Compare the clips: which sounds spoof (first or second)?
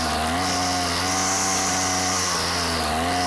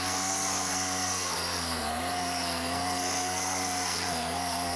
second